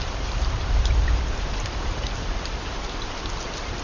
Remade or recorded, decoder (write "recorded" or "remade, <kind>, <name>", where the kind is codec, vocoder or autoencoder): recorded